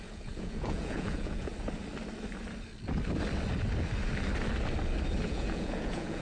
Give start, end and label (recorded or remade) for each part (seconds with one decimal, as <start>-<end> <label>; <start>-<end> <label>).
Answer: 0.0-1.5 remade; 1.5-5.2 recorded; 5.2-6.2 remade